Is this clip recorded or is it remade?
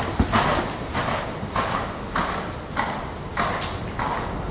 recorded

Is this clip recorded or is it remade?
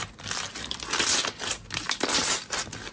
recorded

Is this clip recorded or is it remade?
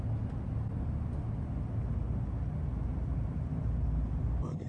recorded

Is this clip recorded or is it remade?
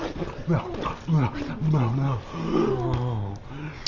recorded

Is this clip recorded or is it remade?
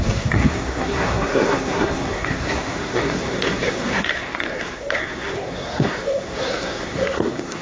remade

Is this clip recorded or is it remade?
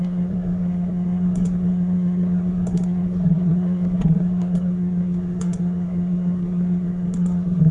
remade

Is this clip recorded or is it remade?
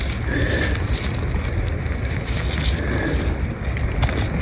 recorded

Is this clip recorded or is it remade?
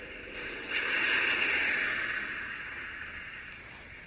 recorded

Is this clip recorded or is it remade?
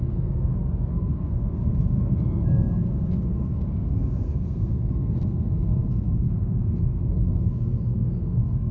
remade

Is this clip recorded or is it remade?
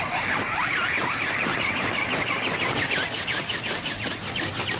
recorded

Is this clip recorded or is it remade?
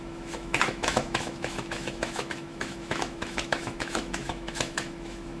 remade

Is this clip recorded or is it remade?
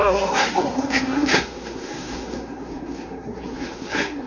remade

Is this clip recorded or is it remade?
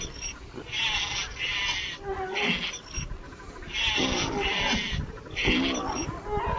recorded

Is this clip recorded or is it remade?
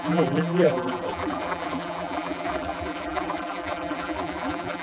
remade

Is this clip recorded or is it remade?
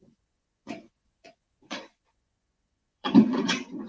remade